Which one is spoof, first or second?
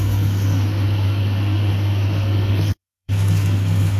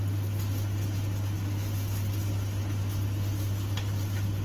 first